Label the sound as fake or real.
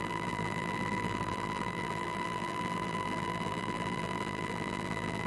fake